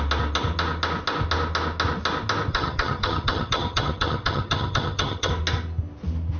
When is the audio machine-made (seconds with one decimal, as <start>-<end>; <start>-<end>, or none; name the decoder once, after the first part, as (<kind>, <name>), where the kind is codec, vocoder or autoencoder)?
2.5-5.3 (vocoder, HiFi-GAN)

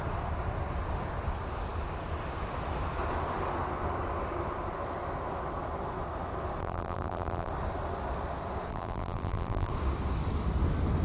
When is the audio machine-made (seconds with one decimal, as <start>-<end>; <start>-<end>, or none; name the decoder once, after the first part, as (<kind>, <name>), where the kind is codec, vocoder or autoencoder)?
6.6-7.5 (vocoder, BigVGAN v2); 8.7-9.7

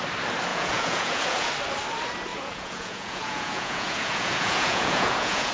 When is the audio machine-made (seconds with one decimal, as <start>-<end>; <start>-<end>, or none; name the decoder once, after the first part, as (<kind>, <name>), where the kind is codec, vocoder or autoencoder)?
0.5-1.5 (vocoder, Vocos); 2.3-5.5

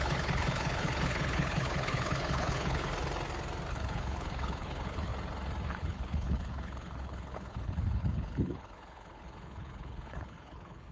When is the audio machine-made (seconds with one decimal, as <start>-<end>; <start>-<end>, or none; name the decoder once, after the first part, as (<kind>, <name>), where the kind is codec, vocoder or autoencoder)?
0.0-2.9 (codec, HILCodec); 3.7-5.1; 5.7-10.9

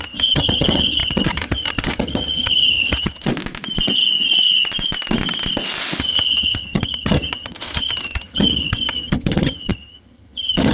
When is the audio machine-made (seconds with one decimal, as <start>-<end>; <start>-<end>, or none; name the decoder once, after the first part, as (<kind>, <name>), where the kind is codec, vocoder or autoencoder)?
0.0-3.3 (vocoder, HiFi-GAN); 6.0-10.7

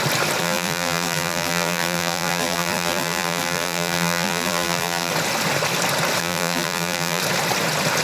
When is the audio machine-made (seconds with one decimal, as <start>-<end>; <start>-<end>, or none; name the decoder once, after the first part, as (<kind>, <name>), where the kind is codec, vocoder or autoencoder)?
0.4-5.1 (vocoder, BigVGAN v2); 6.2-7.2

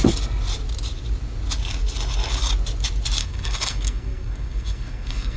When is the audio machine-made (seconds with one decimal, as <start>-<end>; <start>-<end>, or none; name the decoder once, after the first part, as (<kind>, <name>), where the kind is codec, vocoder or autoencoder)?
3.2-5.4 (codec, SNAC)

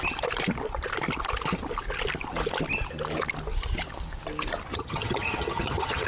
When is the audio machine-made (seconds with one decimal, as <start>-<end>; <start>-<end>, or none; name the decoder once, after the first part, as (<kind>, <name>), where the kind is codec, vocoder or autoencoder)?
4.7-6.1 (vocoder, HiFi-GAN)